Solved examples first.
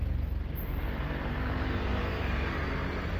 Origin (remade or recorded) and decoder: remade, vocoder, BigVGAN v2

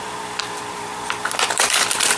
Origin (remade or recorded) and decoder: remade, vocoder, BigVGAN v2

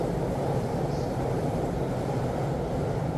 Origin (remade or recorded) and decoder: remade, vocoder, BigVGAN v2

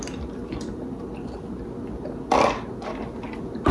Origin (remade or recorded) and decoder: recorded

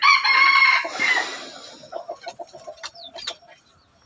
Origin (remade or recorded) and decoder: recorded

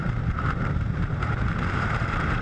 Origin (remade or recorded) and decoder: remade, vocoder, BigVGAN v2